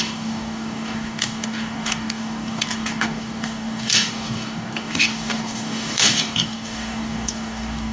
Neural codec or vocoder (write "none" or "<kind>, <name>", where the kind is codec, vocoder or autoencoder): codec, DAC